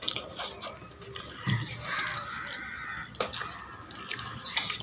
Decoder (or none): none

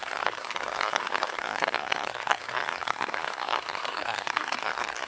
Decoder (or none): codec, SNAC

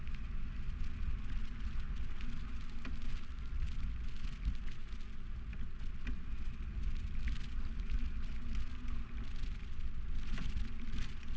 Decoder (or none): none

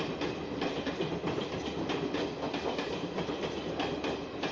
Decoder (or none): none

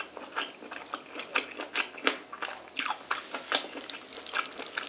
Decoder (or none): none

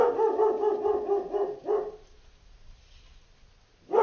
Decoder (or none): none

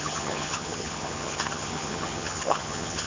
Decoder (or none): vocoder, HiFi-GAN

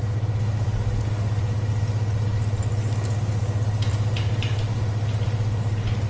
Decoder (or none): none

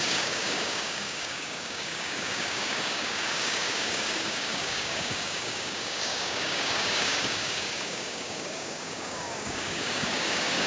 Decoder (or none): codec, DAC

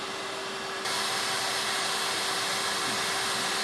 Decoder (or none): none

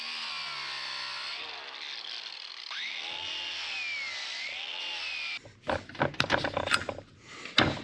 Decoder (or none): none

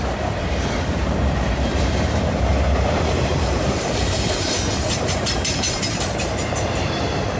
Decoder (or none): vocoder, BigVGAN v2